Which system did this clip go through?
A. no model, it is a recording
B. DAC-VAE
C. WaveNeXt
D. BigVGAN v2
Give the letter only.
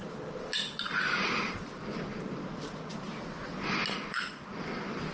A